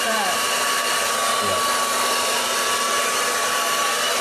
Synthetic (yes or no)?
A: no